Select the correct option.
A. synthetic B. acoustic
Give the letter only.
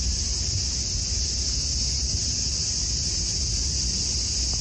B